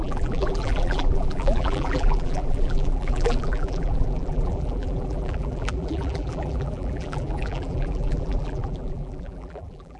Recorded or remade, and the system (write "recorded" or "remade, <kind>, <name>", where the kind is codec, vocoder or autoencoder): remade, vocoder, BigVGAN v2